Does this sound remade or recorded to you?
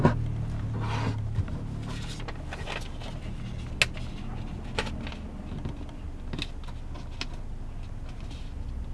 recorded